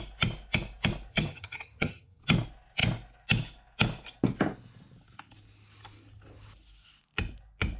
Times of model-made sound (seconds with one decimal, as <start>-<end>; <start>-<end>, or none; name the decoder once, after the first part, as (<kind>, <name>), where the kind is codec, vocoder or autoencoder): 1.1-2.2 (vocoder, HiFi-GAN)

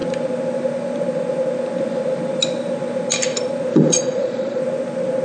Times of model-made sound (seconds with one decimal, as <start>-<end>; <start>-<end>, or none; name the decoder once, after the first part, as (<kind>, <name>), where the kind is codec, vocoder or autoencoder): 3.7-4.6 (vocoder, Vocos)